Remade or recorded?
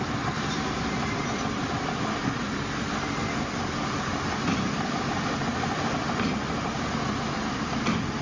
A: recorded